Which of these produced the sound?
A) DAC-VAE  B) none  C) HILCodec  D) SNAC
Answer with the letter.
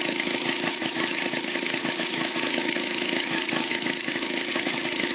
A